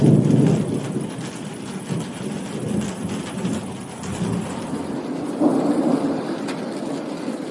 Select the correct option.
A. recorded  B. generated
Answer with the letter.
A